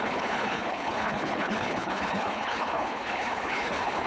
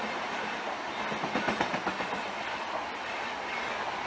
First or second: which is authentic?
second